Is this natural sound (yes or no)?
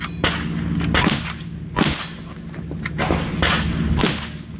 yes